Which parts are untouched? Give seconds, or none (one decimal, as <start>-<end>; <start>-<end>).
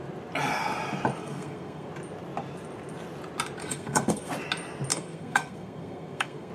0.0-1.2; 1.9-3.6; 4.3-4.9